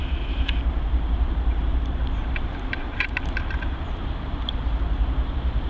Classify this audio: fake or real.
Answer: fake